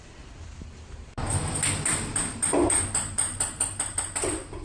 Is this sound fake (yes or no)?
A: yes